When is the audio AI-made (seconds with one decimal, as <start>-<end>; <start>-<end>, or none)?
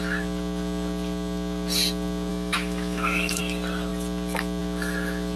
2.3-3.4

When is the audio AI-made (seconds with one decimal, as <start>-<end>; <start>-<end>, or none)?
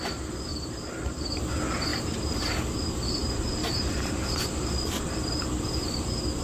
0.5-1.5; 1.9-2.9; 3.6-4.4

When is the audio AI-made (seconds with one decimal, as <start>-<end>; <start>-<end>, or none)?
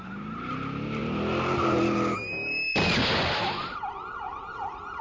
none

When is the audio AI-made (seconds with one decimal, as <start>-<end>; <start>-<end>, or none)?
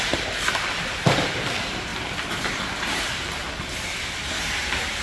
0.0-1.9; 2.5-3.4; 4.2-5.0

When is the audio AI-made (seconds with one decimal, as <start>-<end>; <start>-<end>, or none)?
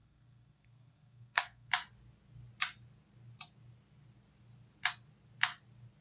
0.0-1.7